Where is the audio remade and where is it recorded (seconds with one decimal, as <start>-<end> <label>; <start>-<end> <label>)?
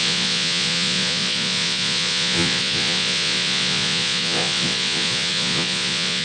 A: 0.0-6.2 remade